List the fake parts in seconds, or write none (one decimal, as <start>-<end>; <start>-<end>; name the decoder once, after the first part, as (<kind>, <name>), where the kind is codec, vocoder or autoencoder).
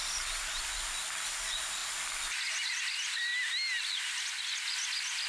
none